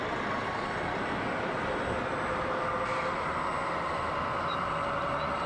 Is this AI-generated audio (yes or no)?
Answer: no